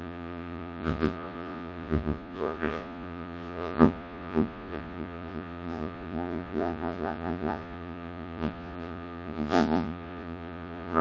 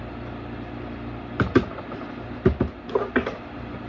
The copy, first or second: first